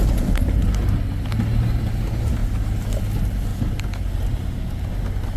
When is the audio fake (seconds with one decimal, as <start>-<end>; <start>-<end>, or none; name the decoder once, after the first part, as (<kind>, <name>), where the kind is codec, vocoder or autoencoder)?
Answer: none